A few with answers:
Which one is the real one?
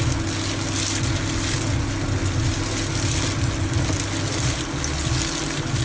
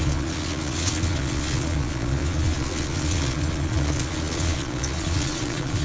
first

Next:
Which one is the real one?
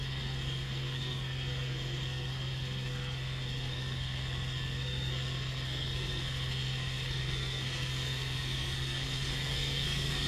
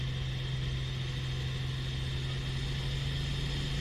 second